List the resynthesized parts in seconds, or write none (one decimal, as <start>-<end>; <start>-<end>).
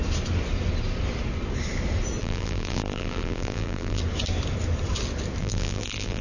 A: 2.2-4.0; 5.4-6.2